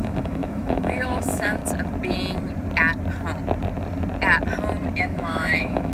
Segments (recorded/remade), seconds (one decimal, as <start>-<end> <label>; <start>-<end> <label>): 0.0-1.6 remade; 1.6-5.0 recorded; 5.0-5.9 remade